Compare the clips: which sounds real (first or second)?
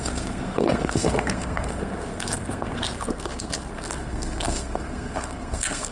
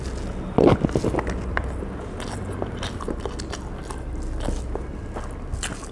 second